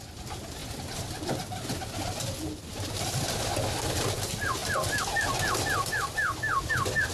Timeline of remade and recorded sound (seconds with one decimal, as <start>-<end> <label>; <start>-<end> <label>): 0.0-7.1 recorded